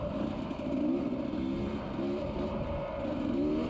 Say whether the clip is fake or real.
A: real